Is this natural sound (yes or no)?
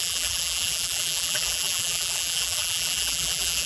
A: no